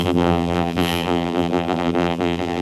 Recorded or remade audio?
remade